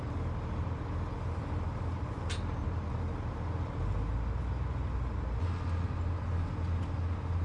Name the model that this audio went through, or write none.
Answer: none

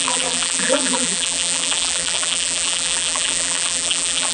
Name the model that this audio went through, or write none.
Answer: vocoder, BigVGAN v2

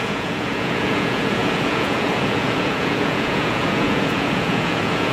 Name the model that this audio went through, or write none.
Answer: vocoder, Vocos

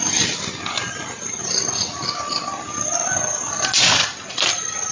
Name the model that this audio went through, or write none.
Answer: none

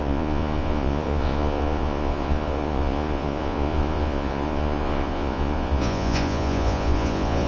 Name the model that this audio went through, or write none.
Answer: vocoder, Vocos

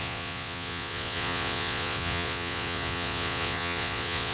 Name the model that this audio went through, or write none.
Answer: vocoder, Vocos